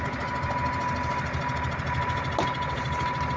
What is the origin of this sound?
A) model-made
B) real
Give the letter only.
B